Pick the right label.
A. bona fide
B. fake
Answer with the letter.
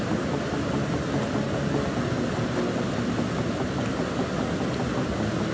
A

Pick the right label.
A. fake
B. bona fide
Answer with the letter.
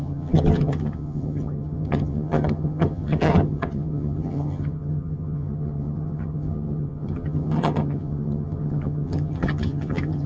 A